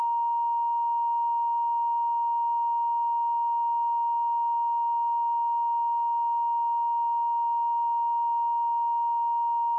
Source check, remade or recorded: recorded